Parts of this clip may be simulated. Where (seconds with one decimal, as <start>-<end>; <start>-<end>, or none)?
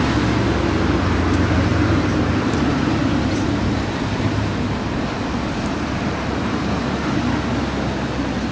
1.7-6.8